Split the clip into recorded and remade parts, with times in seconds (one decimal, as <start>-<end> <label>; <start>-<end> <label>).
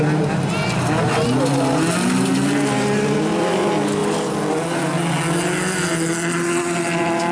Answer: 0.0-7.3 recorded